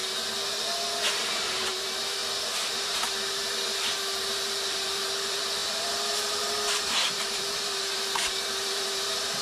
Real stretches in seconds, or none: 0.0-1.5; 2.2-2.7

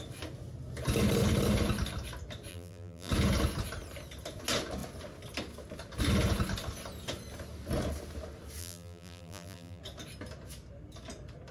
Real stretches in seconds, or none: 0.0-2.5; 3.1-8.6; 9.8-11.5

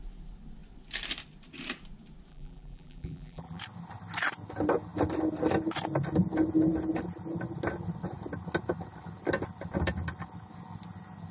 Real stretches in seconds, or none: 0.0-2.3; 3.6-11.3